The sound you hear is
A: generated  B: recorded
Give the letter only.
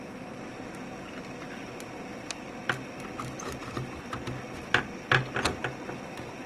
B